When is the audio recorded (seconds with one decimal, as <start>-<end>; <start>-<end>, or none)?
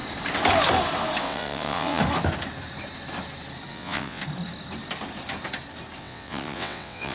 0.0-1.2; 2.0-3.7; 4.2-6.0